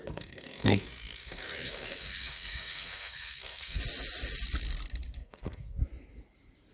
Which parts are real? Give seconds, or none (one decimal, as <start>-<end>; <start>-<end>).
3.8-5.2; 5.8-6.7